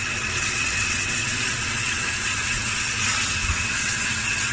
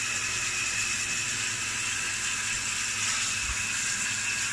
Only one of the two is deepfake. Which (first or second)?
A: first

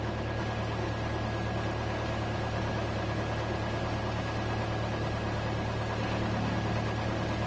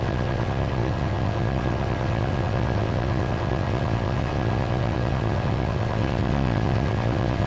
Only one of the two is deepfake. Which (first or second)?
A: second